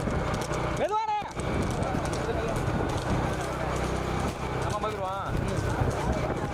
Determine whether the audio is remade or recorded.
recorded